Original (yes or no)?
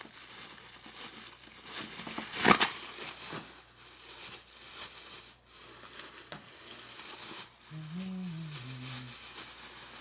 yes